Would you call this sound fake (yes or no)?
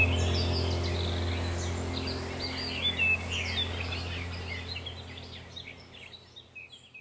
no